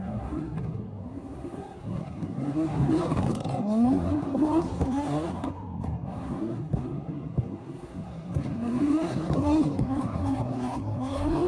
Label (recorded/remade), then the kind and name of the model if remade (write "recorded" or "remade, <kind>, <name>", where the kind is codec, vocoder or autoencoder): remade, codec, SNAC